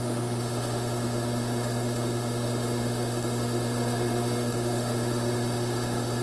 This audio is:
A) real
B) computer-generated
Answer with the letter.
B